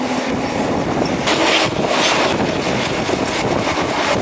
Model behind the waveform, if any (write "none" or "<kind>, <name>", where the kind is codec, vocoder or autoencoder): none